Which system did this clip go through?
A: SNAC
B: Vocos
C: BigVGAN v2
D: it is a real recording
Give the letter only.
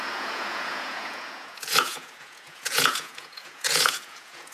B